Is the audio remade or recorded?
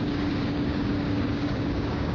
remade